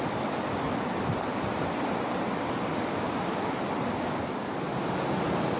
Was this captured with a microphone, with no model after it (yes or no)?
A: yes